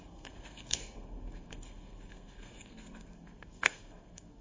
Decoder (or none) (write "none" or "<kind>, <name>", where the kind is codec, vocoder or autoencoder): codec, SNAC